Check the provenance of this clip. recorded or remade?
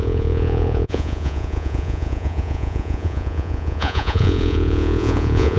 remade